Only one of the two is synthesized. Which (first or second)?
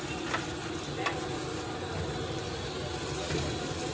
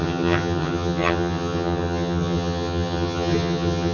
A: second